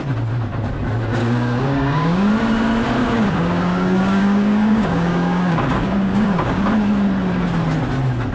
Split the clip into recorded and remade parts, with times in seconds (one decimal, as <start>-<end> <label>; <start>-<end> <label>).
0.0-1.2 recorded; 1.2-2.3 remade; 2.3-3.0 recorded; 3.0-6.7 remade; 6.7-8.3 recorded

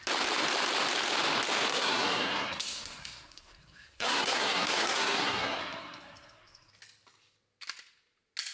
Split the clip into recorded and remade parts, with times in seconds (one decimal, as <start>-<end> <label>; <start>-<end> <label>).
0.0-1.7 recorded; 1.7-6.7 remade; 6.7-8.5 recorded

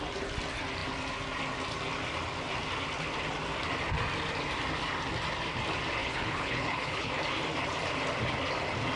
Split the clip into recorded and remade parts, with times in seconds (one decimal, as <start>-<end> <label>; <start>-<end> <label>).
0.0-6.0 recorded; 6.0-7.1 remade; 7.1-9.0 recorded